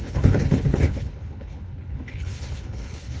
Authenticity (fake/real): fake